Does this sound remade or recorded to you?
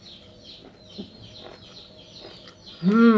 recorded